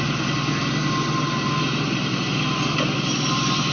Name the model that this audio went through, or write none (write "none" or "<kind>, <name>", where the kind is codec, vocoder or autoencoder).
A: none